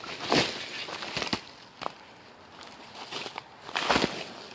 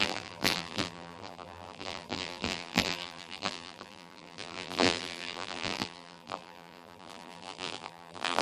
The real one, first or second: first